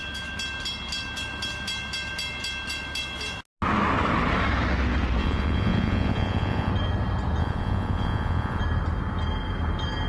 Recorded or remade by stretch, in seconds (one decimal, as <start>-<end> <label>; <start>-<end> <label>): 0.0-5.2 recorded; 5.2-6.7 remade; 6.7-7.4 recorded; 7.4-8.6 remade; 8.6-10.1 recorded